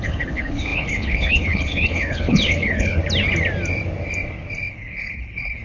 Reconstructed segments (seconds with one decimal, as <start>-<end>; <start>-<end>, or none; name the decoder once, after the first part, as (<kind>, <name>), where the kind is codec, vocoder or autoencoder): 0.0-3.0 (codec, HILCodec); 4.7-5.6